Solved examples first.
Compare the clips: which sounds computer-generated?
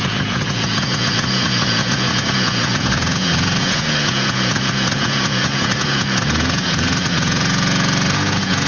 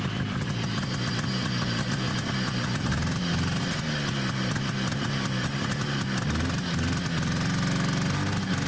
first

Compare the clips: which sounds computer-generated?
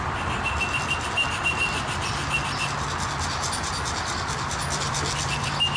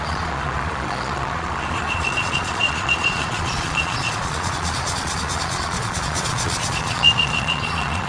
second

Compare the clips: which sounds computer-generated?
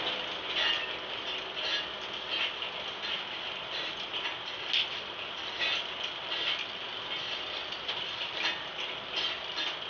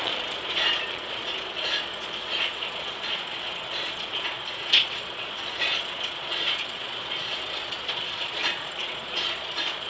second